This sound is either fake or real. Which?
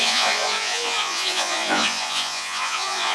fake